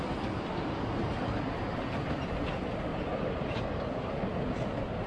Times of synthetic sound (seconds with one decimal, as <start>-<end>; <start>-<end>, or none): 2.9-3.5